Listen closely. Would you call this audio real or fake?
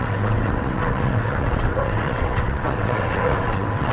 fake